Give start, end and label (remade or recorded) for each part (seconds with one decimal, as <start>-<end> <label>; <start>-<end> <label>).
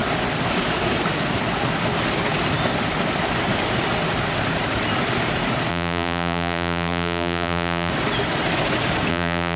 0.0-5.7 recorded; 5.7-7.9 remade; 7.9-9.1 recorded; 9.1-9.6 remade